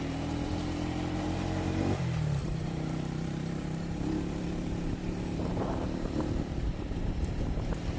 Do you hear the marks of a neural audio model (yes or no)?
yes